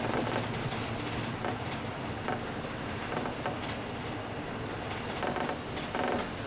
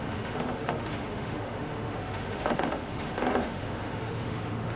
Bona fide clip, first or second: first